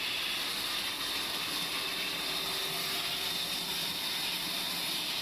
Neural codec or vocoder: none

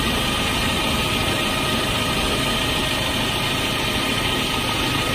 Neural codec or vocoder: none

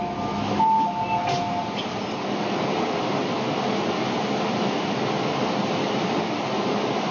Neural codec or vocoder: none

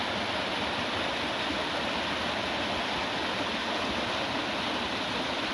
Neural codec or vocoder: none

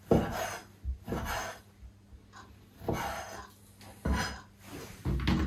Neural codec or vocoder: none